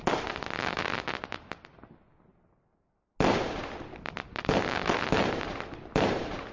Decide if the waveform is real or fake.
real